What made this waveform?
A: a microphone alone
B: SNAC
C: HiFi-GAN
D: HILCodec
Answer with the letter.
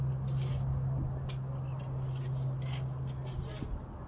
A